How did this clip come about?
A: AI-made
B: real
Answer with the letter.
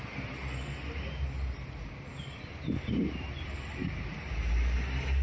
B